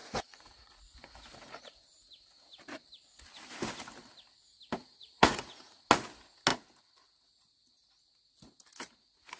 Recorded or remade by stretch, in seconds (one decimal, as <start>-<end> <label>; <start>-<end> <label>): 0.0-0.8 remade; 0.8-4.8 recorded; 4.8-5.8 remade; 5.8-9.4 recorded